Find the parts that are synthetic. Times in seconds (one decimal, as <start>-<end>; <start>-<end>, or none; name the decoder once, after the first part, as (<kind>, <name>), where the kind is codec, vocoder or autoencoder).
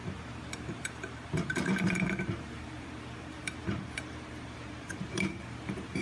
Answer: 0.0-6.0 (vocoder, BigVGAN v2)